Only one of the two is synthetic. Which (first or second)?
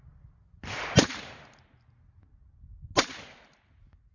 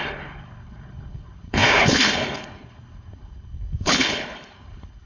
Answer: second